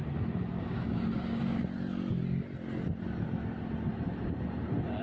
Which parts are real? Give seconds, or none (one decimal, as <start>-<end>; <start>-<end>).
0.0-0.5; 1.6-5.0